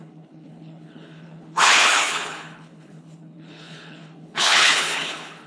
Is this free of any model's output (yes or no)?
no